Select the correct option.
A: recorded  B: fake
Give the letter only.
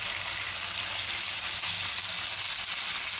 A